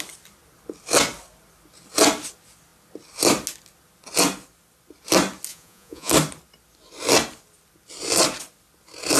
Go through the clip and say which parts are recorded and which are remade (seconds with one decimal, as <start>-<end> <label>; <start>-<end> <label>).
0.0-5.5 recorded; 5.5-6.1 remade; 6.1-9.2 recorded